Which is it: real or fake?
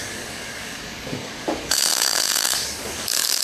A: fake